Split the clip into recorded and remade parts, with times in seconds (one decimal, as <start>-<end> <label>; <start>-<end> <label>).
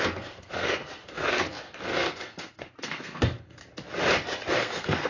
0.0-3.6 remade; 3.6-4.5 recorded; 4.5-5.1 remade